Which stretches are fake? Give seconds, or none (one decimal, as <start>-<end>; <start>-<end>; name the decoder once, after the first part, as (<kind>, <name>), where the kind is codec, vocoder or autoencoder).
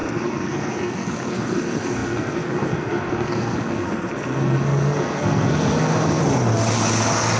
0.0-6.2 (codec, SNAC)